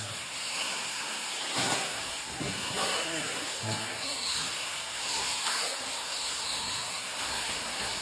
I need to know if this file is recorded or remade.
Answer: remade